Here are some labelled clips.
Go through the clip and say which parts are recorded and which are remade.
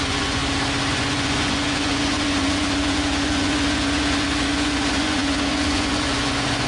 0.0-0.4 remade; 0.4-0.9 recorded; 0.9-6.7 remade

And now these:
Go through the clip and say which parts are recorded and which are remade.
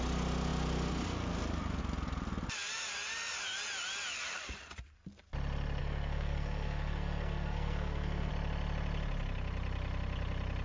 0.0-5.8 recorded; 5.8-8.3 remade; 8.3-10.6 recorded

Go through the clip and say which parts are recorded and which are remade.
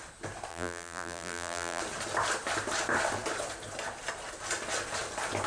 0.0-0.5 recorded; 0.5-1.8 remade; 1.8-5.5 recorded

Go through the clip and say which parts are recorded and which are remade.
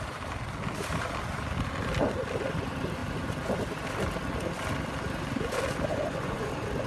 0.0-5.9 recorded; 5.9-6.5 remade; 6.5-6.9 recorded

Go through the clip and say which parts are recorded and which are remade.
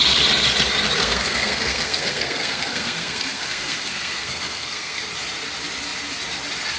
0.0-1.0 recorded; 1.0-5.1 remade; 5.1-6.8 recorded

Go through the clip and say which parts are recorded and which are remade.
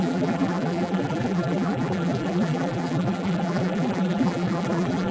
0.0-5.1 remade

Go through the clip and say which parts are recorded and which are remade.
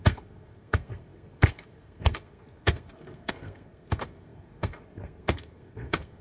0.0-6.2 remade